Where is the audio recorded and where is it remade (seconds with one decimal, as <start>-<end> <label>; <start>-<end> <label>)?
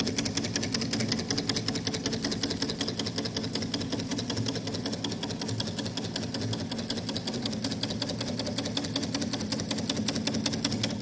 0.0-11.0 recorded